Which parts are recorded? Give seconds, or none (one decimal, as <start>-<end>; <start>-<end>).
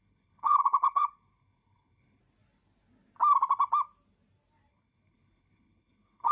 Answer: 2.2-4.7